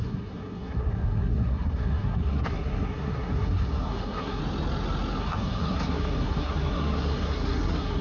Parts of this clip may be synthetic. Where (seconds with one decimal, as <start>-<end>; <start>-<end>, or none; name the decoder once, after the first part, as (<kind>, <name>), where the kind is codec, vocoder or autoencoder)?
0.0-4.4 (codec, SNAC); 5.2-8.0